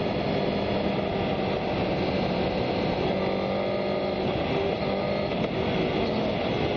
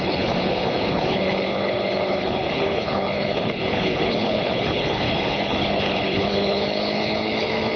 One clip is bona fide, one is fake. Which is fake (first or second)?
second